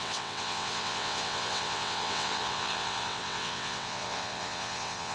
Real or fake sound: fake